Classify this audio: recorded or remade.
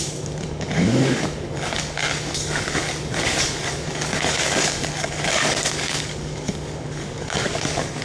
remade